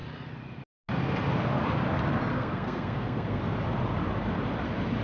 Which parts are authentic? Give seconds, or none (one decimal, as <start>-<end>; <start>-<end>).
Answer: 0.0-2.3; 3.4-5.0